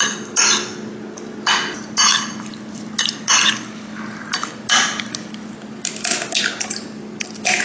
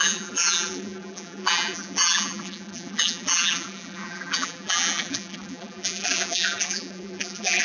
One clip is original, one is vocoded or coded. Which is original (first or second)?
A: first